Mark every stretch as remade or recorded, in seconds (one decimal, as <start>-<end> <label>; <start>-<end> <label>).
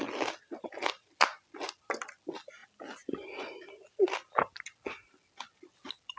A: 0.0-6.2 recorded